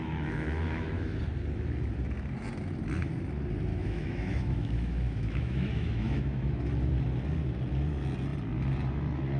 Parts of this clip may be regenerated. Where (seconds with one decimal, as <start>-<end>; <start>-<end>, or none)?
0.0-1.2; 3.7-6.6